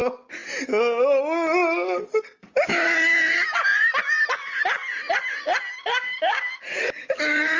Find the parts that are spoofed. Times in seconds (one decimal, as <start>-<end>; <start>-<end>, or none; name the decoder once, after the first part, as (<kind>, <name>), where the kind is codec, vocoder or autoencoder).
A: none